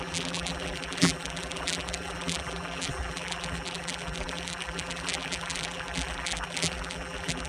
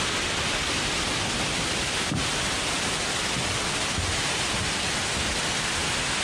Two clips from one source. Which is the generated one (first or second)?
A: first